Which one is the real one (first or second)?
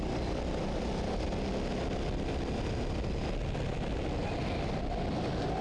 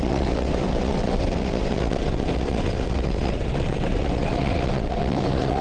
first